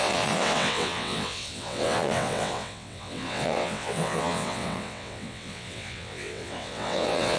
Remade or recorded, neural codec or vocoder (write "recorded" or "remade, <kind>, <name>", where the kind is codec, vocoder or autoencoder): remade, vocoder, WaveNeXt